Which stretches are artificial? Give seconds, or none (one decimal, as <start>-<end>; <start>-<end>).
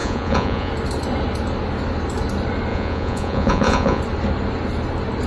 0.0-0.7; 2.7-4.0